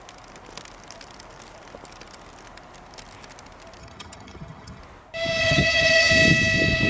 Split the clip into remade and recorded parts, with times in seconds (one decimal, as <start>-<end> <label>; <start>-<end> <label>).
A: 0.0-3.8 recorded; 3.8-4.8 remade; 4.8-5.4 recorded; 5.4-6.1 remade; 6.1-6.9 recorded